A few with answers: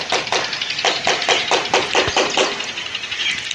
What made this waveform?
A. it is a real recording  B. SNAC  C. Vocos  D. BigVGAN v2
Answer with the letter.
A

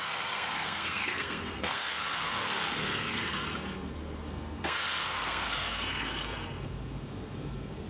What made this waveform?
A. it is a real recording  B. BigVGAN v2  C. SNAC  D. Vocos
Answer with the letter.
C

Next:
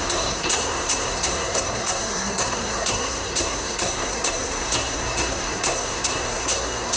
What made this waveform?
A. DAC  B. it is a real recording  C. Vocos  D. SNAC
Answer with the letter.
D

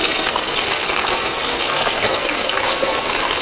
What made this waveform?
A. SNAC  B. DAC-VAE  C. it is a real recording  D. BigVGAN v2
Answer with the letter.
A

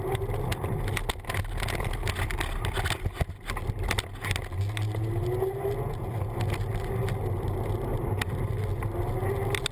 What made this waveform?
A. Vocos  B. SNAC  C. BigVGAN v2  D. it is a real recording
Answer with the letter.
D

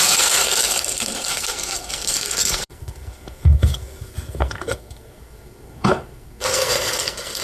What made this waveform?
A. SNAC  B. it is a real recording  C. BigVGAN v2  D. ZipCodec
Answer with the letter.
A